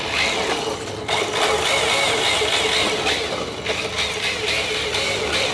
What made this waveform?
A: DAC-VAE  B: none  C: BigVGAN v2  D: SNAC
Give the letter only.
B